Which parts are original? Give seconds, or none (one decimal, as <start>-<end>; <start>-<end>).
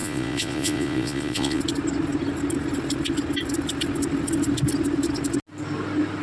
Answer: 1.6-6.2